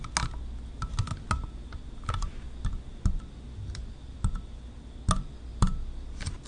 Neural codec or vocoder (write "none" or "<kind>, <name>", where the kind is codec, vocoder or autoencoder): none